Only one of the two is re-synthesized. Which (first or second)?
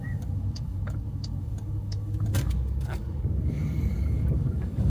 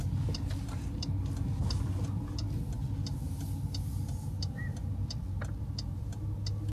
first